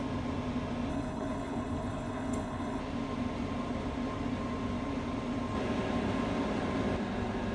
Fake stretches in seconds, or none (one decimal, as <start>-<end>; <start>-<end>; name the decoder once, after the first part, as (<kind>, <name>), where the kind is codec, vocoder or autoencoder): 0.9-2.8 (codec, HILCodec)